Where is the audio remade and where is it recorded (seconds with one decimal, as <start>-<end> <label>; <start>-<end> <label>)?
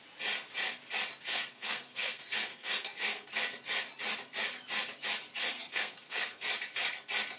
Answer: 0.0-1.3 recorded; 1.3-3.3 remade; 3.3-5.4 recorded; 5.4-6.4 remade; 6.4-7.4 recorded